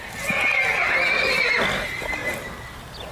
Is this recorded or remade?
recorded